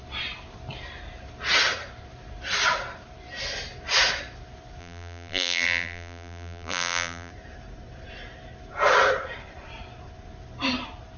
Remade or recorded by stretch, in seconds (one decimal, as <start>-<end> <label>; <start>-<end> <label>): 0.0-4.8 recorded; 4.8-7.3 remade; 7.3-11.2 recorded